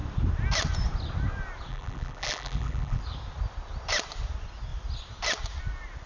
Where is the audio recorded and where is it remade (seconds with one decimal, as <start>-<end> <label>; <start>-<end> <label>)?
0.0-1.7 recorded; 1.7-3.0 remade; 3.0-6.1 recorded